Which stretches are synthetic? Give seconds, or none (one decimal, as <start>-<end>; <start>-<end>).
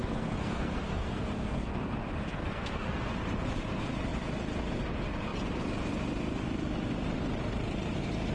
0.0-1.9; 2.3-3.1